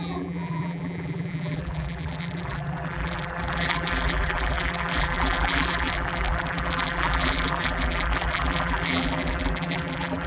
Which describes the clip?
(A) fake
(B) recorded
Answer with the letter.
A